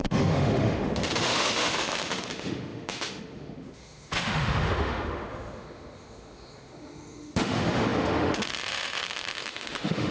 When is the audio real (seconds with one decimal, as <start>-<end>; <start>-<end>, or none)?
none